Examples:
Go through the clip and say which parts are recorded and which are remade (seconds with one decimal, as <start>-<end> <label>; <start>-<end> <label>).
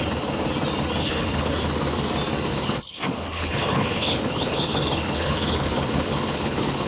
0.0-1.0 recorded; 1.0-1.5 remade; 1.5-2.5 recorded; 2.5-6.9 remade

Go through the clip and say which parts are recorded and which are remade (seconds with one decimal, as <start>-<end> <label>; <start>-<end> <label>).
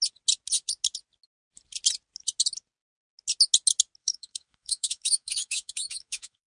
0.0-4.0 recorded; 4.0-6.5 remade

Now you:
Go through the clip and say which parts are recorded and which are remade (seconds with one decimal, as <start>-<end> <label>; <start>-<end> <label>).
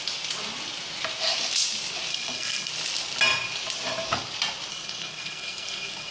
0.0-2.1 recorded; 2.1-2.7 remade; 2.7-4.7 recorded; 4.7-6.1 remade